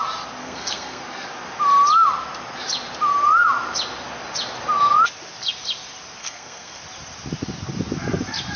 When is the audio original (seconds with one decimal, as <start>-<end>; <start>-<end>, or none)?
0.0-0.4; 1.0-6.2; 6.8-8.6